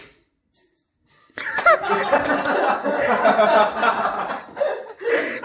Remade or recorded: recorded